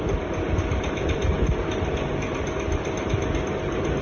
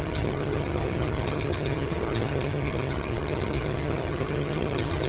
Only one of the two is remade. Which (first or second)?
second